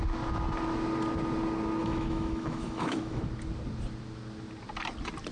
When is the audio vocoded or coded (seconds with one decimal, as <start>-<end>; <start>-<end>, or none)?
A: 1.8-3.2

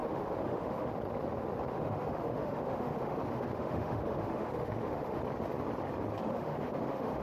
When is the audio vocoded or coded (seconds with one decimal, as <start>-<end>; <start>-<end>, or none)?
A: 0.0-0.9; 1.7-5.2; 6.2-7.2

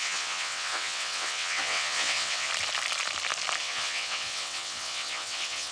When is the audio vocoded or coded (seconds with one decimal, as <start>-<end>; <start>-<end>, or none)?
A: 0.0-2.5; 3.6-5.7